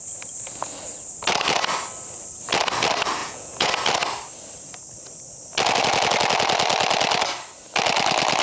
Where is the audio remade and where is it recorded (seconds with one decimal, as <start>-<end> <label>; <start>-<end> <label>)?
0.0-3.2 recorded; 3.2-3.7 remade; 3.7-8.4 recorded